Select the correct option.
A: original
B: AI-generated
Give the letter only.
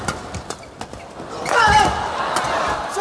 A